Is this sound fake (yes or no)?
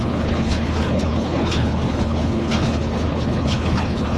yes